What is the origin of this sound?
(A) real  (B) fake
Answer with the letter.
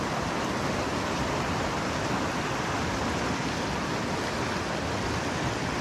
A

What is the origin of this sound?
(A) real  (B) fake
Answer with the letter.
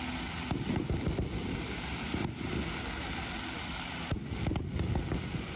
A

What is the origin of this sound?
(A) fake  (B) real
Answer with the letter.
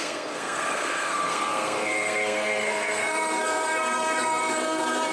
A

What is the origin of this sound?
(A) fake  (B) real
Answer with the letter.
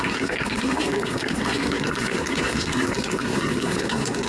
A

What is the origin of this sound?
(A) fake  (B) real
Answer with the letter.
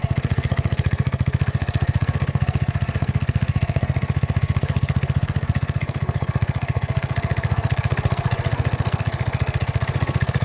A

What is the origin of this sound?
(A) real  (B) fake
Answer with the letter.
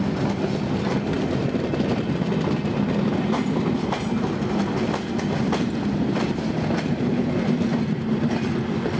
A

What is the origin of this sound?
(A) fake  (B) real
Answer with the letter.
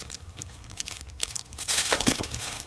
A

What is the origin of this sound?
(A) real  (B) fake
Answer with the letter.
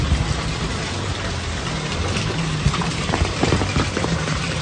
A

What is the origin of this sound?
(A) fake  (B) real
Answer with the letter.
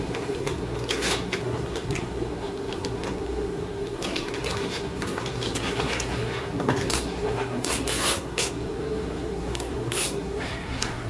A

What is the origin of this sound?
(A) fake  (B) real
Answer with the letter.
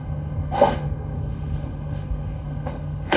A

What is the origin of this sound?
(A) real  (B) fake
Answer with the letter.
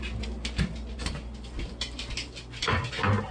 A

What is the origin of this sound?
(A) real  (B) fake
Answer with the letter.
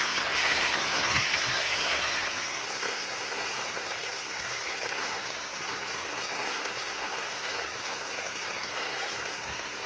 B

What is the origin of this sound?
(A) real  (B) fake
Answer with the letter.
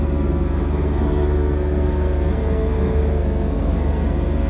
B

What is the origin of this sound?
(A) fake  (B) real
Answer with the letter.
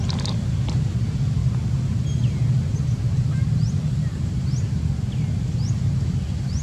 B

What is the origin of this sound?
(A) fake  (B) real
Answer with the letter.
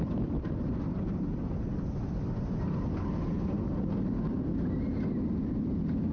B